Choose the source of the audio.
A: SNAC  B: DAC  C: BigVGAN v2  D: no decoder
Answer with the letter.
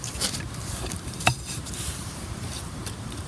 C